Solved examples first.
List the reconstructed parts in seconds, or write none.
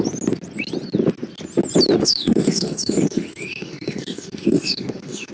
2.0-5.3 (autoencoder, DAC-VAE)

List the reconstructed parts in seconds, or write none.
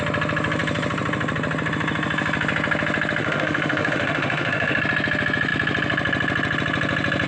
3.2-4.8 (autoencoder, DAC-VAE)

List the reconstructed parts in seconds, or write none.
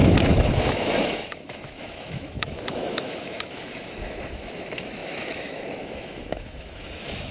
0.0-7.3 (autoencoder, DAC-VAE)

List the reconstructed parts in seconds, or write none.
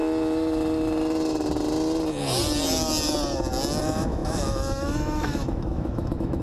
3.8-6.4 (autoencoder, DAC-VAE)